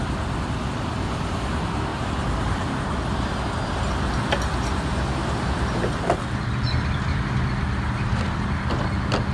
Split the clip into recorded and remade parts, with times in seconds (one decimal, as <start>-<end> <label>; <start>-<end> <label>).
0.0-1.9 recorded; 1.9-3.3 remade; 3.3-9.3 recorded